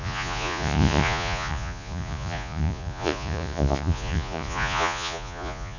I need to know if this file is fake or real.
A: fake